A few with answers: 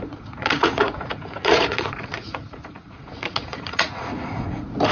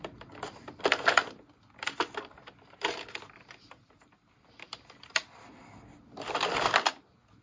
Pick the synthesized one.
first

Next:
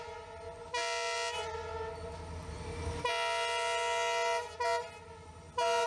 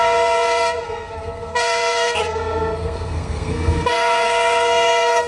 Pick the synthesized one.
second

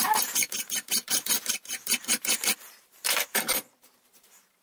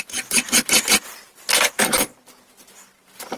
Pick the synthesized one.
first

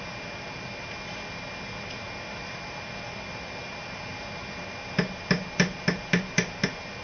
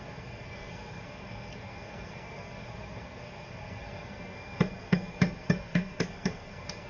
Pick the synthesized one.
second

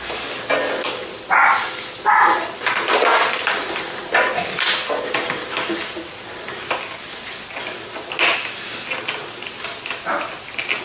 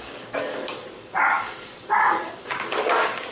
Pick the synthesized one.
second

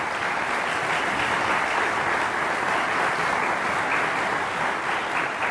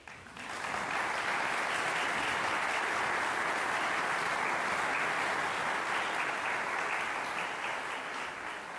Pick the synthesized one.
first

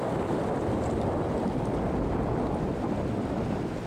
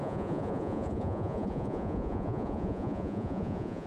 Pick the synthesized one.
second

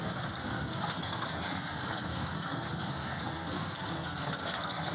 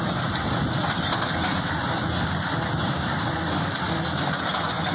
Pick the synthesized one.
first